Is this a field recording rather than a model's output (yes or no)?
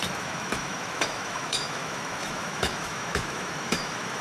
no